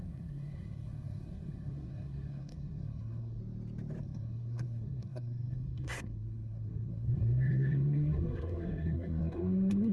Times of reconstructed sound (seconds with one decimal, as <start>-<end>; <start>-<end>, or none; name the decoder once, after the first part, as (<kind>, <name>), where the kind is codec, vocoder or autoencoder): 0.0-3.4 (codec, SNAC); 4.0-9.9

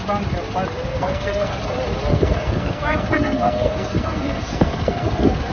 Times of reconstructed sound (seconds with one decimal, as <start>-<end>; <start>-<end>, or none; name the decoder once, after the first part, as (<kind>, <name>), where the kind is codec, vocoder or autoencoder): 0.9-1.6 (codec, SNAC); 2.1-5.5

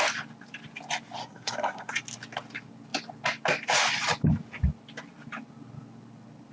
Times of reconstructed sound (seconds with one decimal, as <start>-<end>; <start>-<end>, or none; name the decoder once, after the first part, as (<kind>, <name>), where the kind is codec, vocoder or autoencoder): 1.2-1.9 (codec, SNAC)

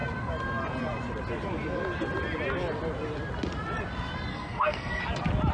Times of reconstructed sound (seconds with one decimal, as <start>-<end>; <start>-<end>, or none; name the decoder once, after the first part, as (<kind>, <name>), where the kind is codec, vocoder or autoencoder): 4.3-5.0 (codec, SNAC)

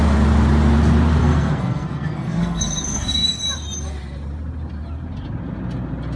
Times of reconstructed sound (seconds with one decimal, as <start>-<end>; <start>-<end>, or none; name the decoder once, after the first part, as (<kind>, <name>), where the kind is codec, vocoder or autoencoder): 1.2-3.4 (codec, SNAC)

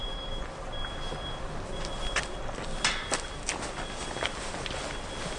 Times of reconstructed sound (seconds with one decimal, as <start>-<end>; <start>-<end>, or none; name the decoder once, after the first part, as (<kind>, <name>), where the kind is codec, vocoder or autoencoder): none

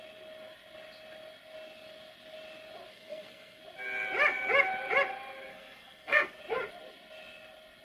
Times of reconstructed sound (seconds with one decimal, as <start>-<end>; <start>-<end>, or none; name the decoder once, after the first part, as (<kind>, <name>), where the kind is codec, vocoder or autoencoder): 2.9-3.6 (codec, SNAC); 5.5-6.4